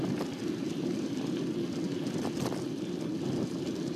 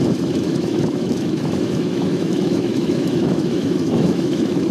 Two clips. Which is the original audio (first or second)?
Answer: first